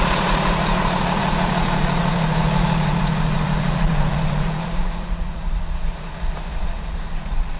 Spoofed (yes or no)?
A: yes